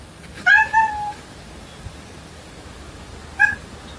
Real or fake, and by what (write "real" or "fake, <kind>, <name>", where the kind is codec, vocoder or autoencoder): real